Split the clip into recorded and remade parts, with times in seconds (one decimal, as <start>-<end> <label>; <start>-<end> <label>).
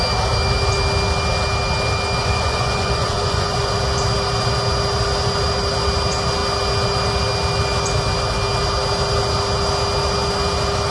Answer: 0.0-2.2 recorded; 2.2-3.7 remade; 3.7-10.9 recorded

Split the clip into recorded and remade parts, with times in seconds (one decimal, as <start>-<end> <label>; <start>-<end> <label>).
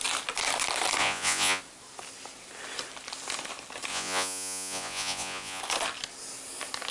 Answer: 0.0-1.0 recorded; 1.0-1.6 remade; 1.6-3.9 recorded; 3.9-5.6 remade; 5.6-6.9 recorded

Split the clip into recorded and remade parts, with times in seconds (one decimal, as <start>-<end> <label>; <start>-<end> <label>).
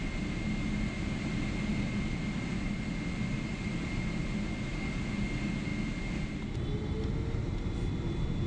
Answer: 0.0-8.5 recorded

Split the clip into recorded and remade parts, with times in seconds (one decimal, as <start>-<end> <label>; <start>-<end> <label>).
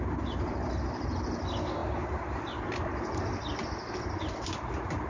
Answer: 0.0-5.1 recorded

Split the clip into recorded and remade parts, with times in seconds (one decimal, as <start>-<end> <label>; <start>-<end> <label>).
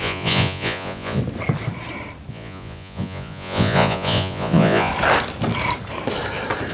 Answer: 0.0-1.2 remade; 1.2-2.3 recorded; 2.3-4.9 remade; 4.9-6.7 recorded